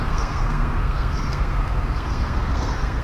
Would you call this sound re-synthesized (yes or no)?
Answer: yes